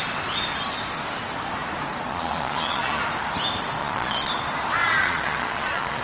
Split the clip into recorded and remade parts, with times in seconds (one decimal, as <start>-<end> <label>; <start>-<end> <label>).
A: 0.0-2.1 recorded; 2.1-3.0 remade; 3.0-3.8 recorded; 3.8-4.3 remade; 4.3-5.0 recorded; 5.0-6.0 remade